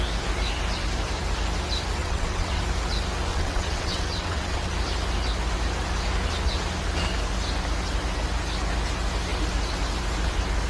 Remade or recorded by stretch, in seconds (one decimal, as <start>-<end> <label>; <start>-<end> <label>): 0.0-2.0 recorded; 2.0-2.6 remade; 2.6-3.3 recorded; 3.3-4.7 remade; 4.7-10.7 recorded

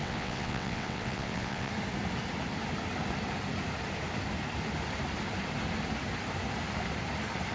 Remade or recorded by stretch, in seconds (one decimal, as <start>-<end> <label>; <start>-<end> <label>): 0.0-1.7 remade; 1.7-7.5 recorded

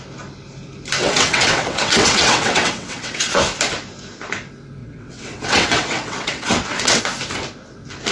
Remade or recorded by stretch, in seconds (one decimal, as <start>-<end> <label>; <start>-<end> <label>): 0.0-1.0 recorded; 1.0-3.4 remade; 3.4-4.8 recorded; 4.8-7.0 remade; 7.0-8.1 recorded

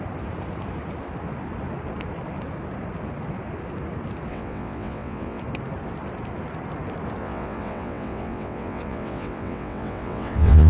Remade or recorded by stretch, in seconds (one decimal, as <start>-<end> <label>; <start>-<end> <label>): 0.0-4.3 recorded; 4.3-5.4 remade; 5.4-7.2 recorded; 7.2-10.7 remade

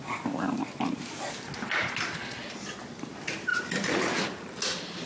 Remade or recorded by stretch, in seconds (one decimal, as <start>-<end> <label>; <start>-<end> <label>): 0.0-5.1 recorded

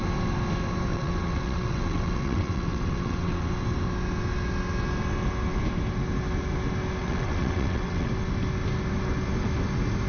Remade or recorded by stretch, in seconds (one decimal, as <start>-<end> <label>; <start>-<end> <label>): 0.0-0.9 recorded; 0.9-3.5 remade; 3.5-7.0 recorded; 7.0-8.1 remade; 8.1-10.1 recorded

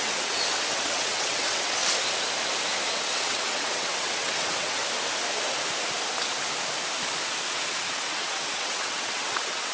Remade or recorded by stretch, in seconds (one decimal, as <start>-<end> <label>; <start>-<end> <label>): 0.0-1.8 remade; 1.8-2.9 recorded; 2.9-4.8 remade; 4.8-7.5 recorded; 7.5-9.7 remade

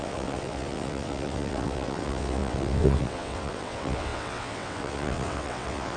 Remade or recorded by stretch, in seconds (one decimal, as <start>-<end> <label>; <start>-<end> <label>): 0.0-6.0 remade